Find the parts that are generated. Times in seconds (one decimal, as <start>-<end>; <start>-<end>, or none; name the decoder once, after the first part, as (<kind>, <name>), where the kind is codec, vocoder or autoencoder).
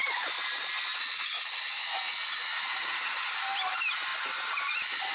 2.8-3.3 (vocoder, HiFi-GAN)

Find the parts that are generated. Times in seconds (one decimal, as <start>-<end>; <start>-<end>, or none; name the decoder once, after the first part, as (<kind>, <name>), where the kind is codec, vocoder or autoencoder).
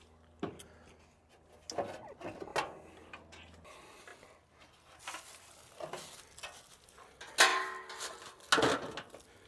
none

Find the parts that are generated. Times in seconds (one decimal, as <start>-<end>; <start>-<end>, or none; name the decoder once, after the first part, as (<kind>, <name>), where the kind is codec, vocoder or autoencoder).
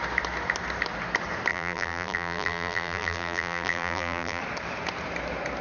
1.5-4.4 (vocoder, BigVGAN v2)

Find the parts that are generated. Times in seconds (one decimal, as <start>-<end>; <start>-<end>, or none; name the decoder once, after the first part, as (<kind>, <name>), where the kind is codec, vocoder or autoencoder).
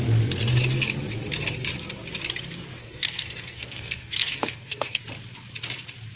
2.8-5.0 (codec, SNAC)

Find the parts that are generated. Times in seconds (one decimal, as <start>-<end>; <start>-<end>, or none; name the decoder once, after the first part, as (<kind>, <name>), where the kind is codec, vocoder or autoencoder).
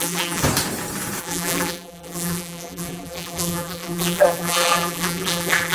0.0-0.4 (vocoder, BigVGAN v2); 1.2-5.7